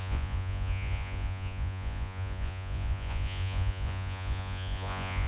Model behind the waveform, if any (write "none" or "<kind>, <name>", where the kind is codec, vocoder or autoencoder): vocoder, Vocos